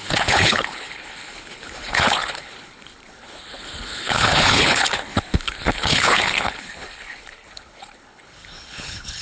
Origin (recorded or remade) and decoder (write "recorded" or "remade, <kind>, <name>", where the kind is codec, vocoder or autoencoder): remade, codec, HILCodec